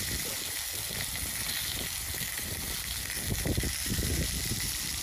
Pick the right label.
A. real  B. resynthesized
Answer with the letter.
A